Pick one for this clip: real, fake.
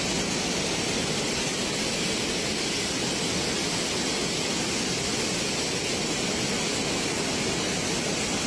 real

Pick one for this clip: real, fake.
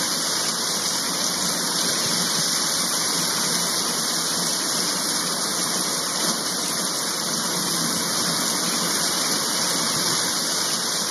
real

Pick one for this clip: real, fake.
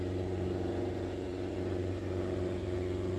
fake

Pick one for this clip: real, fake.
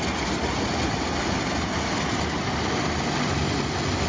real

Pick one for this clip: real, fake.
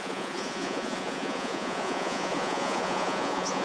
fake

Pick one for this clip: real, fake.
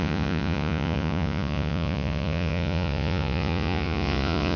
fake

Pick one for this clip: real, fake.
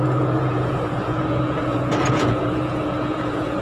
fake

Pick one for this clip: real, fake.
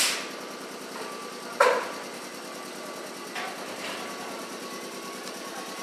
real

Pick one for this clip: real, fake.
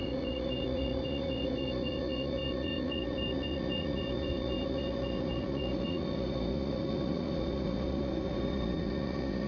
fake